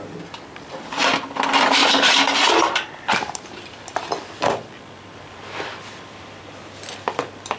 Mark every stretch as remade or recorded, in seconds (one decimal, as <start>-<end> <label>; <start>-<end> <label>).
0.0-1.8 recorded; 1.8-6.4 remade; 6.4-7.6 recorded